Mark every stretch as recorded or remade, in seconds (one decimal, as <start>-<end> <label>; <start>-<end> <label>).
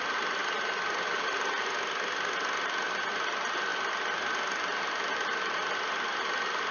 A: 0.0-6.7 recorded